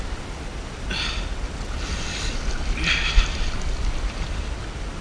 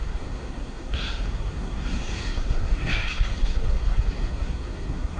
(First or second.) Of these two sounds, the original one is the first